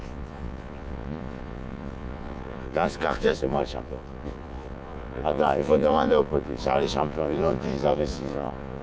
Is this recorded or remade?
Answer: remade